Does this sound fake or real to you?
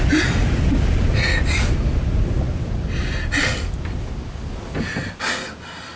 real